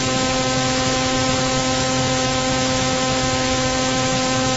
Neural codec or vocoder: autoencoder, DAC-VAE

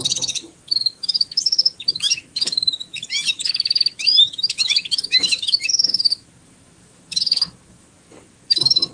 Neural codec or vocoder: autoencoder, DAC-VAE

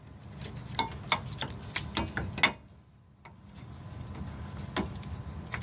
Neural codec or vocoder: none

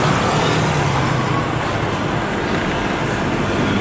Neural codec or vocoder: none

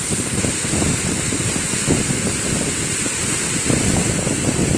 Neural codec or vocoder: none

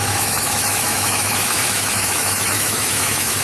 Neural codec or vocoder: autoencoder, DAC-VAE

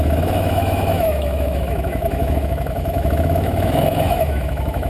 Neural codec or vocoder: autoencoder, DAC-VAE